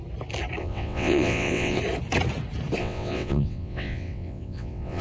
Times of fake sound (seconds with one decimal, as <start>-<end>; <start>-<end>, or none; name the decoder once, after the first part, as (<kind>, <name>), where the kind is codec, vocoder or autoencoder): 0.6-1.8 (vocoder, WaveNeXt); 2.8-5.0